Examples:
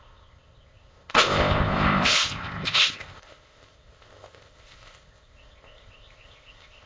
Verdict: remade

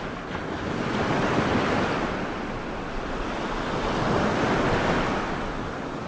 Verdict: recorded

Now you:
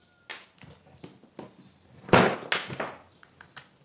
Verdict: recorded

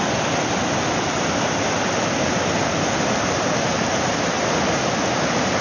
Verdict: recorded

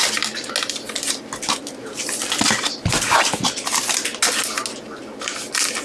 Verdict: recorded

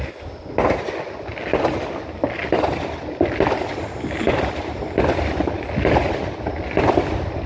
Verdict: recorded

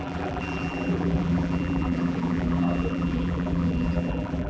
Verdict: remade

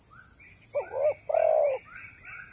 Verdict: recorded